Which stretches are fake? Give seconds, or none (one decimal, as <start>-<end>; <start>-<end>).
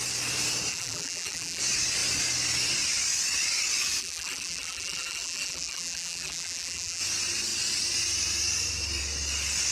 0.7-1.6; 4.0-7.0